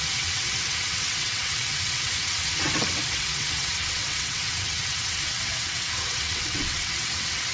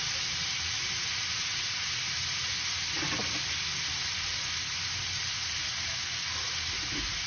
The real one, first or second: second